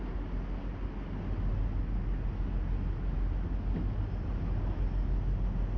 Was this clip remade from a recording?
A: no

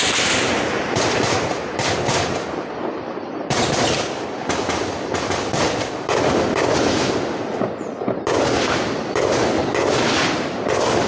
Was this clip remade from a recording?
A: no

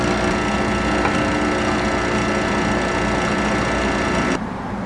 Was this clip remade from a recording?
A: no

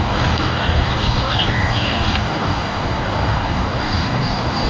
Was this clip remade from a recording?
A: yes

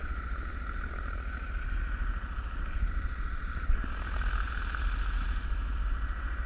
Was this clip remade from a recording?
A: no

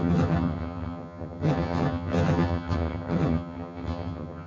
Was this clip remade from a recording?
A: yes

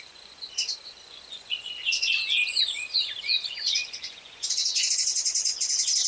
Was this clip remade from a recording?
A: yes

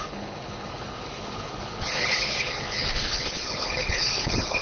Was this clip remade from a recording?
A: yes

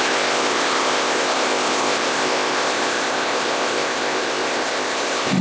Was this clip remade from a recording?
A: yes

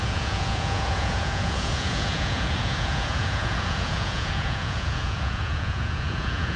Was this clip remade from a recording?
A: yes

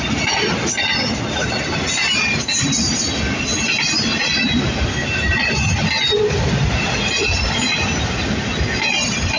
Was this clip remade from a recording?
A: no